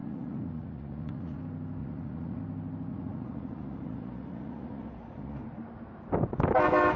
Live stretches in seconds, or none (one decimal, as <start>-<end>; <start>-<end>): 1.4-1.8; 2.4-2.9; 5.4-7.0